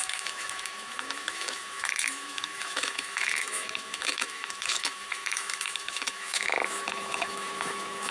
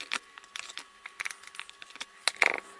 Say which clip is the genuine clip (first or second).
second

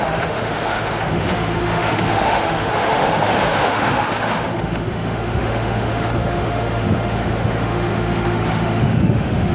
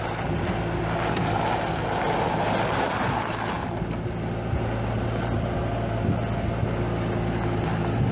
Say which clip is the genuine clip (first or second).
second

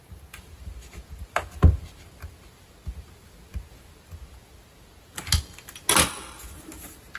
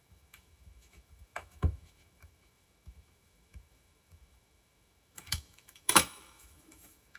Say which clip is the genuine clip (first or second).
first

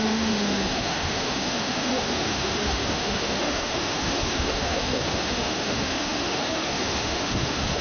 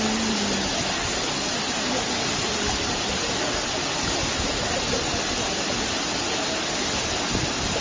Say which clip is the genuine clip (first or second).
second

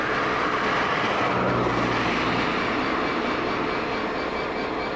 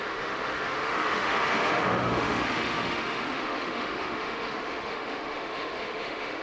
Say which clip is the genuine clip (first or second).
first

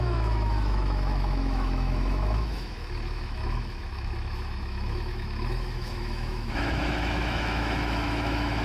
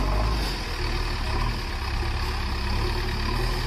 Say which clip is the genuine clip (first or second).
second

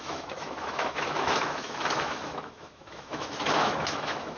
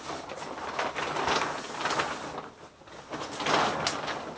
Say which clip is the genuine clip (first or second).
second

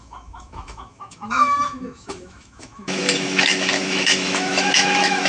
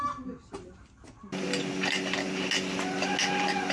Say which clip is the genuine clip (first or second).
second